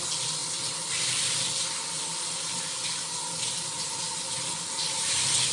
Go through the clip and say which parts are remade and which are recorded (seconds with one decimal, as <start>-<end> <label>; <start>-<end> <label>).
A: 0.0-5.5 recorded